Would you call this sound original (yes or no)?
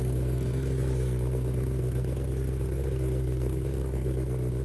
no